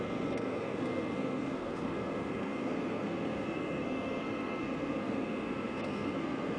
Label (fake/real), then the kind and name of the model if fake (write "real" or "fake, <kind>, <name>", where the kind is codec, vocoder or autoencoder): fake, codec, SNAC